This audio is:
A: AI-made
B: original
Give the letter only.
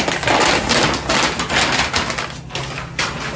B